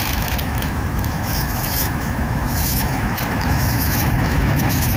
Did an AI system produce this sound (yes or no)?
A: yes